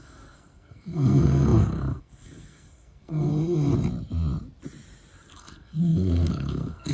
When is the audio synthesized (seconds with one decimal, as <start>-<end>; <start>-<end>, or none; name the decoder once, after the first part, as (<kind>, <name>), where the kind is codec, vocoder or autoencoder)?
0.0-3.3 (codec, SNAC); 5.3-6.9